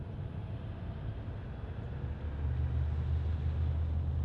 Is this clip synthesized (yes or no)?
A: no